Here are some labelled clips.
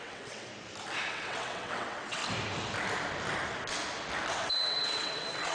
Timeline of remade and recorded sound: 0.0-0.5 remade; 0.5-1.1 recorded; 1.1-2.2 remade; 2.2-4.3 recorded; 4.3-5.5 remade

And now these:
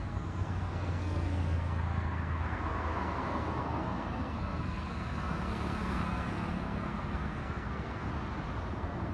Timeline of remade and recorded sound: 0.0-8.1 remade; 8.1-8.7 recorded; 8.7-9.1 remade

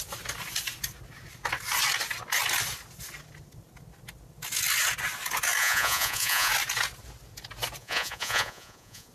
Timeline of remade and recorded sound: 0.0-5.6 recorded; 5.6-6.5 remade; 6.5-7.8 recorded; 7.8-9.1 remade

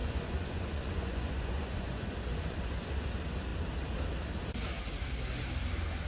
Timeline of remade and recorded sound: 0.0-3.1 remade; 3.1-6.1 recorded

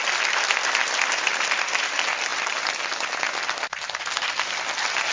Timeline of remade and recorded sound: 0.0-5.1 recorded

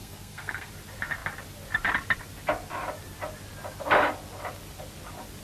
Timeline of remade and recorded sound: 0.0-0.7 remade; 0.7-5.4 recorded